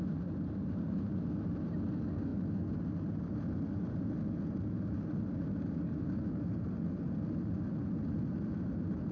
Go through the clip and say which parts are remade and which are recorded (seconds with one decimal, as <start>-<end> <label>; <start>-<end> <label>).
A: 0.0-9.1 recorded